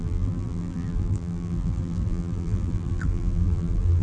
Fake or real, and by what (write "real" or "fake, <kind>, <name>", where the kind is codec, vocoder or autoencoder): fake, vocoder, BigVGAN v2